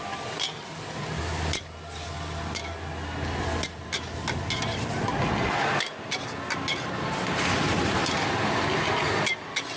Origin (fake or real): real